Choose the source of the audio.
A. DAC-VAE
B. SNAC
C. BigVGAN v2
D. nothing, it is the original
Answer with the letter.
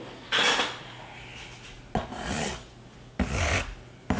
D